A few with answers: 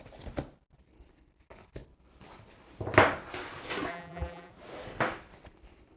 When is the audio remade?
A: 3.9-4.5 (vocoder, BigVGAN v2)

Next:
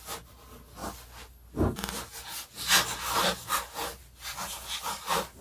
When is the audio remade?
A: none

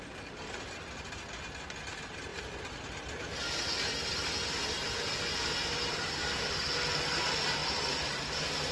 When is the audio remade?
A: 7.6-8.7 (vocoder, BigVGAN v2)

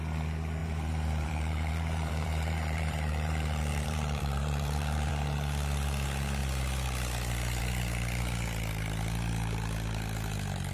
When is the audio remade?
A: 0.6-5.1 (vocoder, BigVGAN v2)

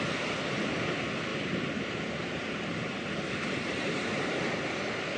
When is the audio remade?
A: 1.3-4.4 (vocoder, BigVGAN v2)